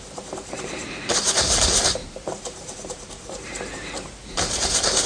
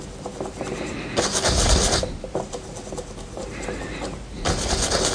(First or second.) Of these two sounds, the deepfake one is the first